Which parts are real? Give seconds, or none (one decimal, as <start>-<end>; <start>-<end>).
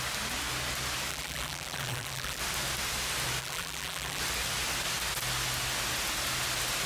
0.0-1.1; 2.4-3.4; 4.2-6.9